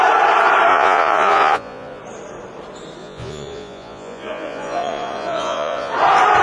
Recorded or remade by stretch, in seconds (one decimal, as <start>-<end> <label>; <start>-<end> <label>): 0.0-0.7 recorded; 0.7-2.0 remade; 2.0-3.0 recorded; 3.0-5.9 remade; 5.9-6.4 recorded